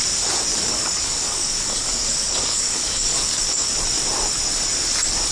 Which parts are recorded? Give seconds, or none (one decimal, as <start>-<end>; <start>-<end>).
0.0-0.5; 3.7-5.3